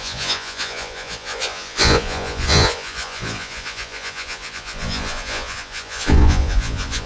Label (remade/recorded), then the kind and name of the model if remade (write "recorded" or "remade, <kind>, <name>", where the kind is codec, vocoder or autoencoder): remade, vocoder, Vocos